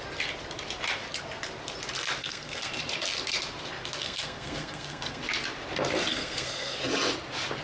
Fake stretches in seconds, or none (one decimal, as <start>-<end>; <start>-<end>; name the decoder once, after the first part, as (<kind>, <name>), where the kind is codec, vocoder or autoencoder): 2.2-2.7 (codec, SNAC); 4.0-5.2; 6.1-6.8